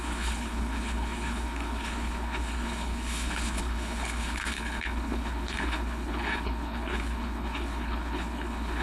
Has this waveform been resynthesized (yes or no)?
yes